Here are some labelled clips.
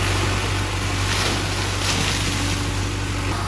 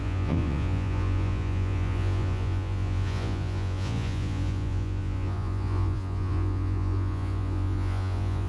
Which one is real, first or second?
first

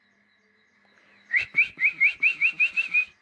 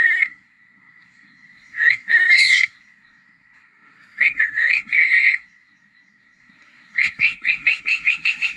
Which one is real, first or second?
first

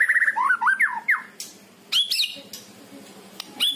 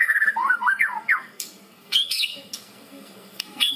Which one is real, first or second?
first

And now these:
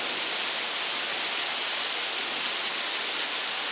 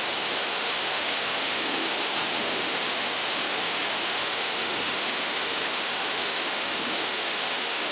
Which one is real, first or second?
first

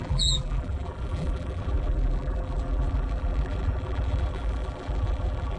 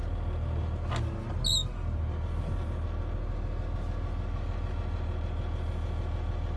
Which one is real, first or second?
second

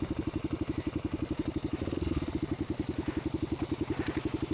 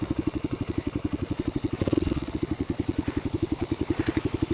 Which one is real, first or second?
first